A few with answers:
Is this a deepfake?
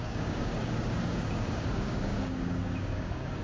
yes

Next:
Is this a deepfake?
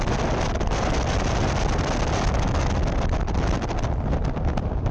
no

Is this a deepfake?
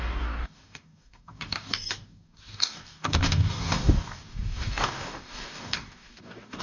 yes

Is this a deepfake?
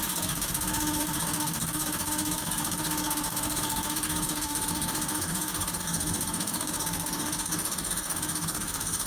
yes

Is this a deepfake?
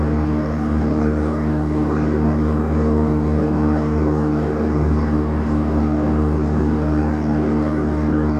yes